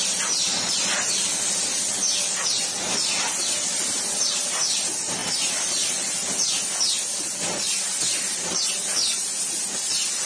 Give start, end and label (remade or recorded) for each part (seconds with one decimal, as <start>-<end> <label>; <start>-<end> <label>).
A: 0.0-10.3 recorded